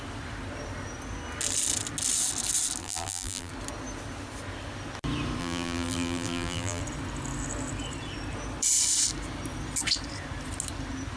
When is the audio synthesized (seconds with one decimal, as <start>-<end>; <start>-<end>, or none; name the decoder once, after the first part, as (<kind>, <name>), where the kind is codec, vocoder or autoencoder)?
2.8-3.5 (vocoder, BigVGAN v2); 5.4-6.8